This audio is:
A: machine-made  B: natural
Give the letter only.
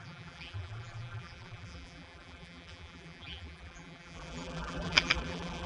A